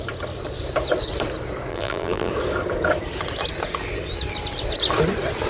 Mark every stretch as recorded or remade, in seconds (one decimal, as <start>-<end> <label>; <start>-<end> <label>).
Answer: 0.0-1.7 recorded; 1.7-2.3 remade; 2.3-5.5 recorded